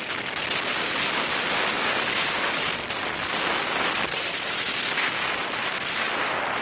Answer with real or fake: real